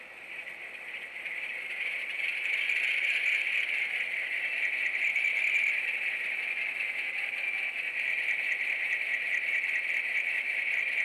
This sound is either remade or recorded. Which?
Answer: recorded